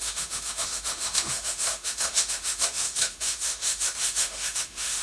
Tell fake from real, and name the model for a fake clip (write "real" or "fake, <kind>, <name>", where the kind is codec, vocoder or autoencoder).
fake, autoencoder, DAC-VAE